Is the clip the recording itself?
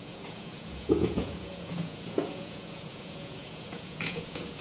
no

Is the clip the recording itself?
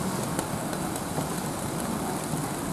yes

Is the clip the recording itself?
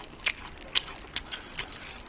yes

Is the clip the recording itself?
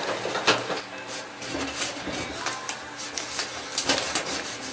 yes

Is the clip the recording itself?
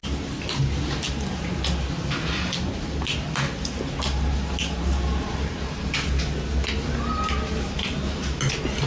yes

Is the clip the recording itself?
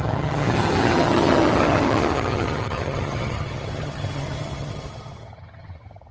no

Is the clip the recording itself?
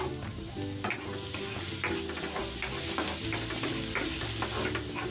yes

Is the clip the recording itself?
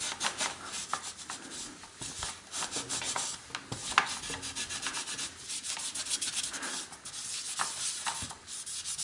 yes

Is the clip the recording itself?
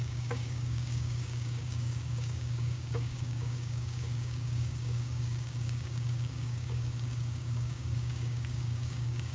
no